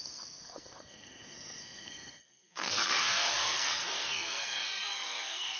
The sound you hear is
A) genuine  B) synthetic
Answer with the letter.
B